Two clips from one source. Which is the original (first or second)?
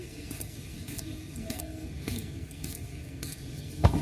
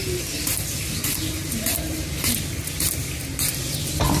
second